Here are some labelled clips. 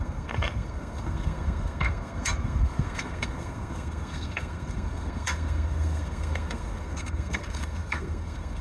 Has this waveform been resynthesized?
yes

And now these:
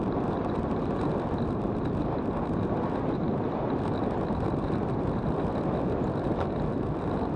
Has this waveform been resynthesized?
no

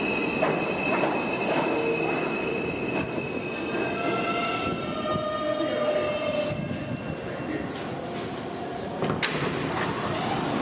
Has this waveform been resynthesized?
no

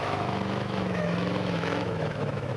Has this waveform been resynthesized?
yes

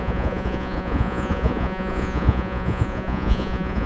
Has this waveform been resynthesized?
yes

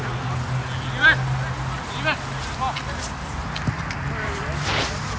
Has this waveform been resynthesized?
no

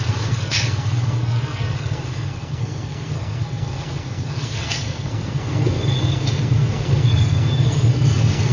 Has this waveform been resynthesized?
yes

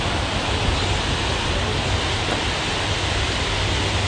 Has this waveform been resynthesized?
no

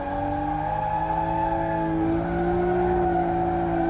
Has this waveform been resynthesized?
no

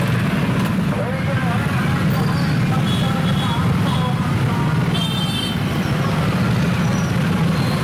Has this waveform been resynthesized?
no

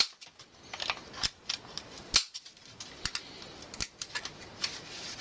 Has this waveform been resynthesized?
no